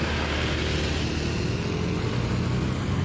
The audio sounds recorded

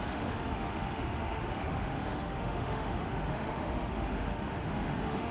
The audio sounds remade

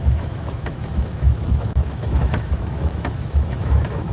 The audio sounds remade